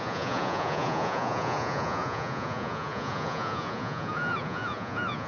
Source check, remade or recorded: remade